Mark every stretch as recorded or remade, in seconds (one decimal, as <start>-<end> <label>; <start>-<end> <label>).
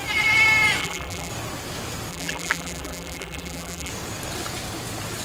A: 0.0-0.8 recorded; 0.8-1.3 remade; 1.3-2.1 recorded; 2.1-3.9 remade; 3.9-5.2 recorded